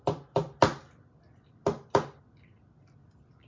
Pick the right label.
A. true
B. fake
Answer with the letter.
A